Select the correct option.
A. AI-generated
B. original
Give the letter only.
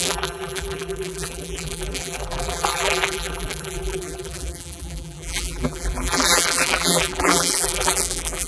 A